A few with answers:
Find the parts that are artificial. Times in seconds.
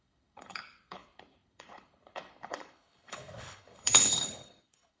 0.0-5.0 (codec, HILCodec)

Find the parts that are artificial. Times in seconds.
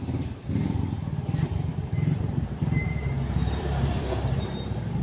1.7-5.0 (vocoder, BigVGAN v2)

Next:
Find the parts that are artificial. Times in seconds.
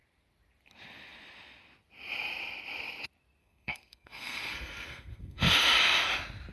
3.4-5.5 (codec, SNAC)